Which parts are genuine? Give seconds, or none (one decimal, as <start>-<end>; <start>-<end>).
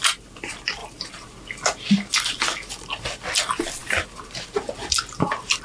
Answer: 0.0-5.6